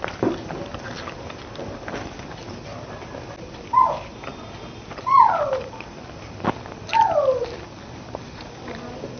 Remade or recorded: recorded